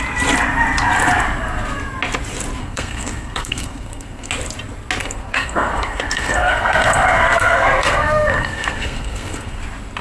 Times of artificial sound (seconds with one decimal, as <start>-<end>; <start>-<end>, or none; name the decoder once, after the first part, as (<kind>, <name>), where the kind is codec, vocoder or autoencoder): 2.6-4.3 (codec, SNAC); 5.0-9.6